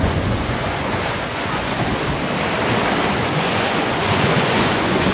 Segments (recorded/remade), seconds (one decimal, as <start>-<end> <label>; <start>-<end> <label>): 0.0-1.9 remade; 1.9-3.1 recorded; 3.1-5.1 remade